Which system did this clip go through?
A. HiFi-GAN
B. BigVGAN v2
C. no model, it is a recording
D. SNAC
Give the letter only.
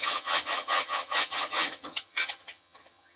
A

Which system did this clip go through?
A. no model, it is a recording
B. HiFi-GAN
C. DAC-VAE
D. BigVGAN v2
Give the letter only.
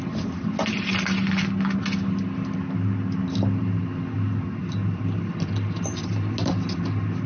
A